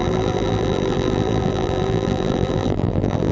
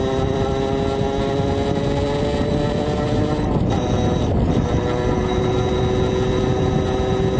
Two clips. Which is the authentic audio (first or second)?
second